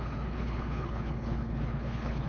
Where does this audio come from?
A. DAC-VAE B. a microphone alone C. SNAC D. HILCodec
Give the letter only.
D